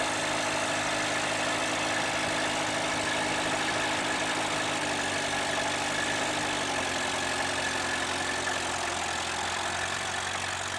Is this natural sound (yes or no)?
yes